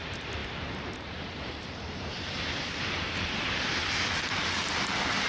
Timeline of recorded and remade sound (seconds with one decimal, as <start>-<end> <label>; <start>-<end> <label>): 0.0-5.3 remade